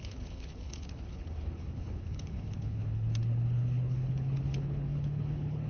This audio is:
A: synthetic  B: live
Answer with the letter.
A